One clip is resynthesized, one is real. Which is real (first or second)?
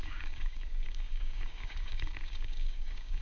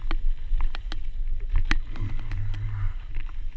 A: second